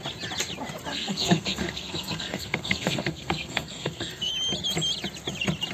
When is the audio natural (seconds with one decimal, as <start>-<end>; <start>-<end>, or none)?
0.0-0.9; 4.3-5.7

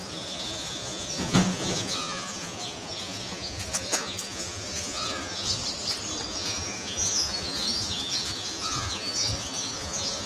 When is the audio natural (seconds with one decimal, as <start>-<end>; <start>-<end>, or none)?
5.6-6.3